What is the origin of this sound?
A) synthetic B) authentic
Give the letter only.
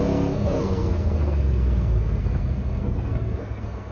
A